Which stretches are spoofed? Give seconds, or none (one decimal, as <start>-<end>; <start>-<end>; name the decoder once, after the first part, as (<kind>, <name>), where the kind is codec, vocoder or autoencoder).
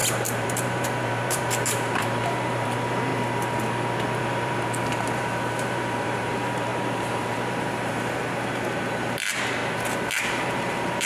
0.0-3.1 (vocoder, BigVGAN v2); 4.2-9.6; 10.3-11.1